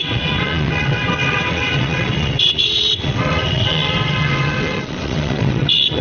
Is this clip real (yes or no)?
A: no